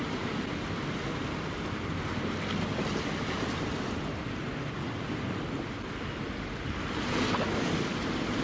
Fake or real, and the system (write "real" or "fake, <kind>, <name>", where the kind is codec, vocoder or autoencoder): real